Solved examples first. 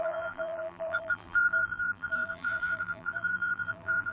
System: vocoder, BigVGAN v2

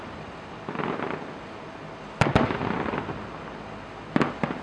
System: none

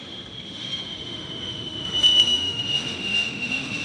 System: autoencoder, DAC-VAE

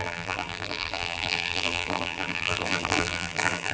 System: vocoder, BigVGAN v2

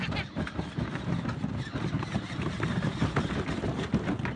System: none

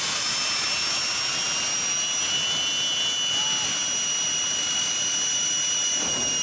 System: none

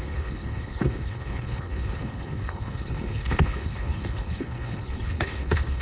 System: codec, HILCodec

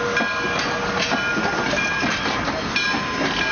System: none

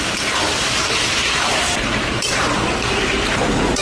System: vocoder, BigVGAN v2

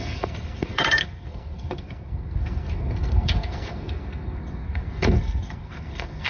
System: codec, SNAC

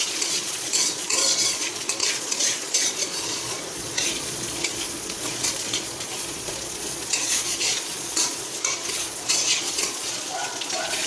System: vocoder, Vocos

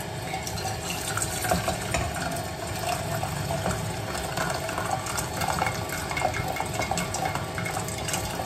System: none